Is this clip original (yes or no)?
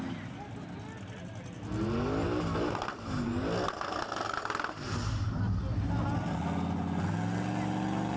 yes